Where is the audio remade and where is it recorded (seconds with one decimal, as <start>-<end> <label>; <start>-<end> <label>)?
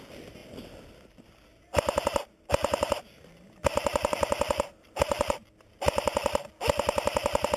0.0-7.6 recorded